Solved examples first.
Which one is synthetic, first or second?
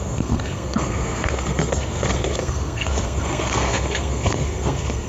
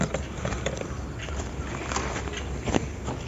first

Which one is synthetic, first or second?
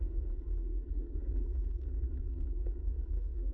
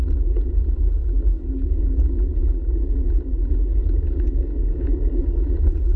first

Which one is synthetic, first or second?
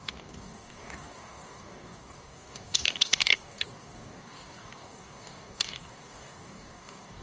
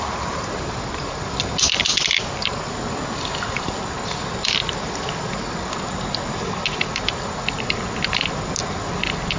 first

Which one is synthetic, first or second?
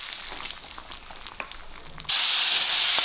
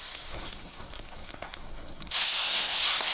second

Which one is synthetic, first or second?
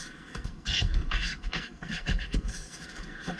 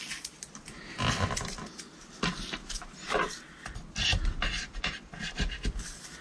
first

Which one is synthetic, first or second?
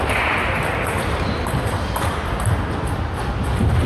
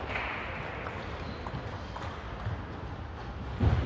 first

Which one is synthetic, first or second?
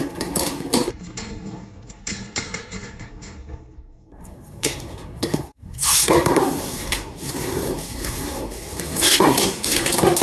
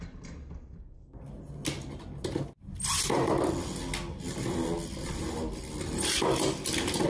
first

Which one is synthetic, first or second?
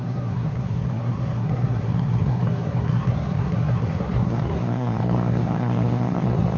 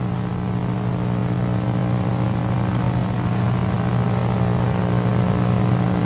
first